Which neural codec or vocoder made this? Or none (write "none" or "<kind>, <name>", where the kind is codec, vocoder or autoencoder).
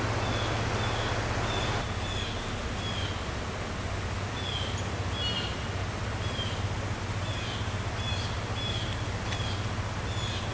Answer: none